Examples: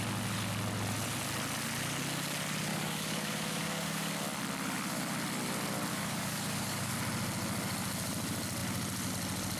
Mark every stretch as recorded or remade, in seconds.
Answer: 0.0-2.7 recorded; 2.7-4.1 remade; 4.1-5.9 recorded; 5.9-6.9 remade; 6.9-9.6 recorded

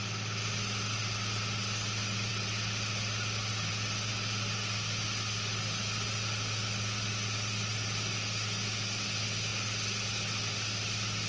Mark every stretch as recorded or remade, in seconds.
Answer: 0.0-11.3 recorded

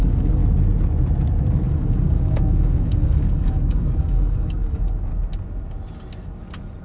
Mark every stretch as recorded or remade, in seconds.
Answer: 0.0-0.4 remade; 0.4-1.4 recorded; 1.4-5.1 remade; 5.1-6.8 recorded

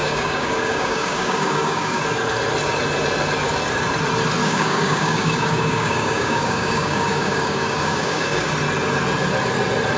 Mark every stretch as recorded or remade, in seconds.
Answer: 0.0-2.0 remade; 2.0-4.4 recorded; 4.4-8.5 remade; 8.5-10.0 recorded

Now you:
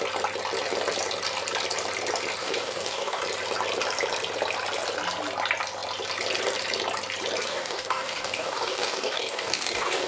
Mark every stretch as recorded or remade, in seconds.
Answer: 0.0-2.4 recorded; 2.4-3.2 remade; 3.2-7.5 recorded; 7.5-10.1 remade

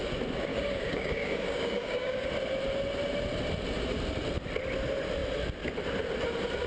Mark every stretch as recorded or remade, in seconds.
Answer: 0.0-0.5 recorded; 0.5-2.3 remade; 2.3-6.7 recorded

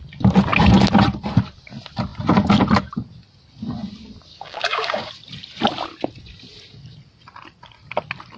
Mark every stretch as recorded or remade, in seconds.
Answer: 0.0-4.3 recorded; 4.3-5.1 remade; 5.1-8.4 recorded